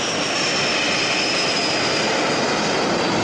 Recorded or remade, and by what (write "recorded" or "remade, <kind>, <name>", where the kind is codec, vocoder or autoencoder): recorded